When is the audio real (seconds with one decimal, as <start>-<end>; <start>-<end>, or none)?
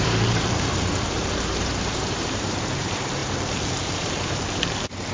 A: none